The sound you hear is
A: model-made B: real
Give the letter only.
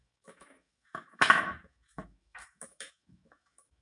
A